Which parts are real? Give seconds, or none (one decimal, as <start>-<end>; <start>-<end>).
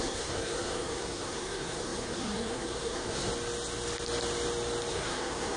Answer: 3.3-4.9